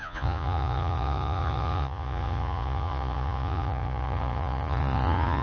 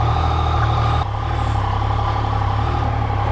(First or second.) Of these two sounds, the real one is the second